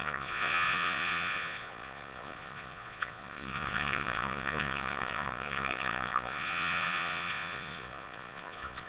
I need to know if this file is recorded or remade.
remade